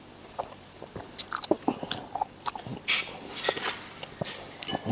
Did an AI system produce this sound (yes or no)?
no